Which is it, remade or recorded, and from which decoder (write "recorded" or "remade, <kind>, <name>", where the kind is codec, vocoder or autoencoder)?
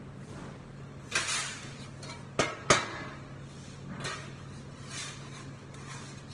recorded